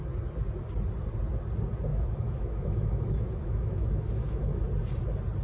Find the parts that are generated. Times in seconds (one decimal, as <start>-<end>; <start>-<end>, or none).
1.9-4.6